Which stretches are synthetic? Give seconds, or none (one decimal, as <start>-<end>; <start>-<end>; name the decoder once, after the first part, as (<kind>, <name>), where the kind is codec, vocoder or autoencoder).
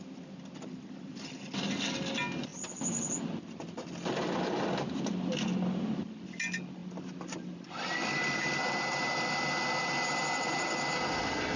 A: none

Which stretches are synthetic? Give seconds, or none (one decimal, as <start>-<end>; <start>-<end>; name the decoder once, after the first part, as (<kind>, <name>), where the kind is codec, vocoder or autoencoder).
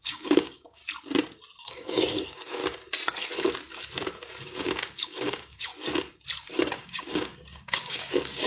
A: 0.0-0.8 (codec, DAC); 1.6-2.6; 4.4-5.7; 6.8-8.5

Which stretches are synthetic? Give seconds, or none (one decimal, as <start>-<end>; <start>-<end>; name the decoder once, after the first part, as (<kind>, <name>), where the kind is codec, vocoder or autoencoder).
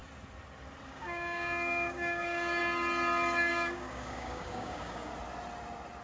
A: 0.9-2.6 (codec, DAC); 3.5-5.1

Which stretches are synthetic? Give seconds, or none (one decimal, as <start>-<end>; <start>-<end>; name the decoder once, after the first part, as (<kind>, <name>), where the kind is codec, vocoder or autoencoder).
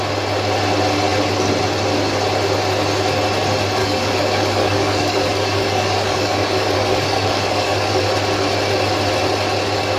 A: 3.8-8.0 (codec, DAC)